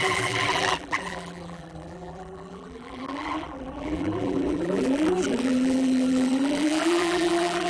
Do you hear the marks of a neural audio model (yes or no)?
yes